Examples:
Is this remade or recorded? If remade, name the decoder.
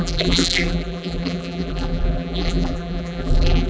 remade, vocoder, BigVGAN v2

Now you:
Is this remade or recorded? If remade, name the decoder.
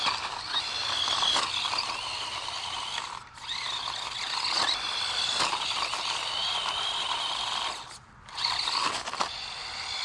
recorded